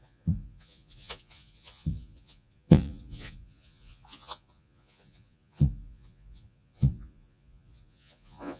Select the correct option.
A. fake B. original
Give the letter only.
A